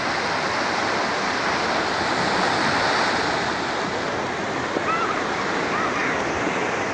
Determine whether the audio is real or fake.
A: real